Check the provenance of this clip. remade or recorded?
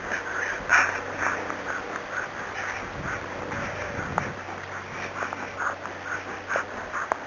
recorded